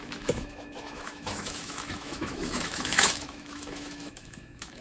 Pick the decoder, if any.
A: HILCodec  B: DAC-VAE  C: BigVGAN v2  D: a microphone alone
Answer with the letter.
B